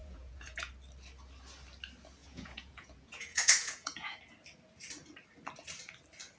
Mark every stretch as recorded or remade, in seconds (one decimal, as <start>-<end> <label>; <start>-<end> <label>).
0.0-0.7 remade; 0.7-2.2 recorded; 2.2-4.2 remade; 4.2-6.4 recorded